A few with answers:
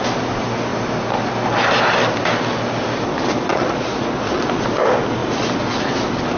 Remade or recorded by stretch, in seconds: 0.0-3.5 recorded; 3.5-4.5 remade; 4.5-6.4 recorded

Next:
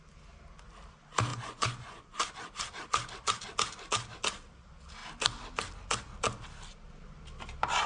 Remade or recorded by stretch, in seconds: 0.0-1.3 recorded; 1.3-2.0 remade; 2.0-7.9 recorded

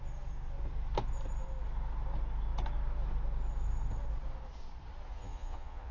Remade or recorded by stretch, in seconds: 0.0-5.1 recorded; 5.1-5.9 remade